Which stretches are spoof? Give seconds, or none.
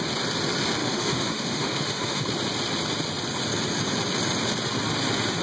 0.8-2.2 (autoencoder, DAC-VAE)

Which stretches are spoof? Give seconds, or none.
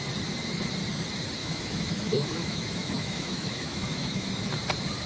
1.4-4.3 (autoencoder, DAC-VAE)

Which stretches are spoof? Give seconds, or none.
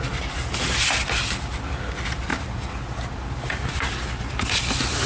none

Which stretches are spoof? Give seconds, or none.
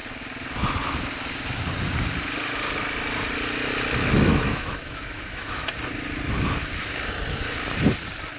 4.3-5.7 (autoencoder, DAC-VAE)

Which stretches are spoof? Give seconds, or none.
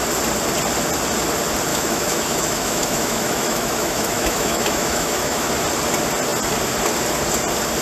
1.7-5.5 (autoencoder, DAC-VAE)